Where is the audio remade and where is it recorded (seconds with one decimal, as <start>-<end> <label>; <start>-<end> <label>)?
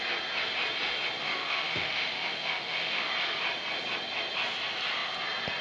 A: 0.0-1.2 recorded; 1.2-3.1 remade; 3.1-5.6 recorded